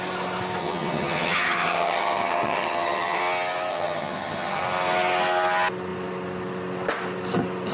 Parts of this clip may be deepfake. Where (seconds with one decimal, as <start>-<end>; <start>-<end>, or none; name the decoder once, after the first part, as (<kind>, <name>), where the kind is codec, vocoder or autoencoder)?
0.6-3.2 (vocoder, HiFi-GAN); 3.7-4.6